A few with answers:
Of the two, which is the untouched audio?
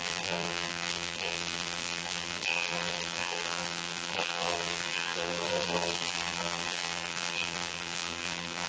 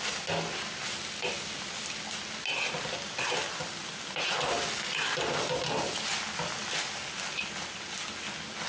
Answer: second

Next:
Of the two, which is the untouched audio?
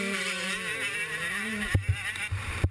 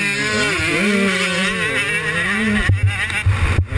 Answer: second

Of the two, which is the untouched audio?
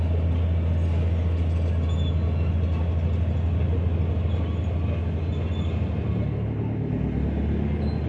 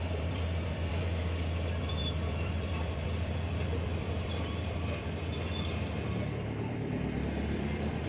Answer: first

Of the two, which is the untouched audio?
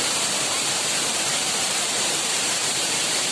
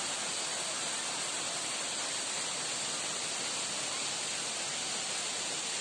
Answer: second